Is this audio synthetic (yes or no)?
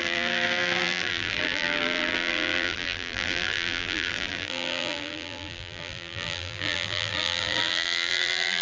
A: yes